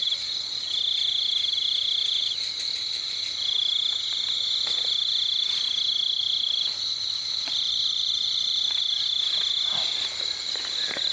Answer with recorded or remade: recorded